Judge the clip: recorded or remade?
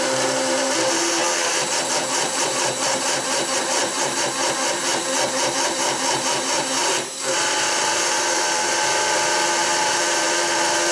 remade